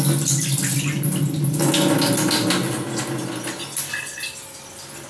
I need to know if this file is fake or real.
real